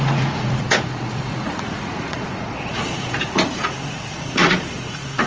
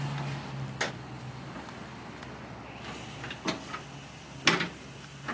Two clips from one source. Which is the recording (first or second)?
second